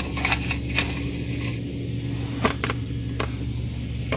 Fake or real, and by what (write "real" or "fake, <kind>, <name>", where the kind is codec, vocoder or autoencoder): real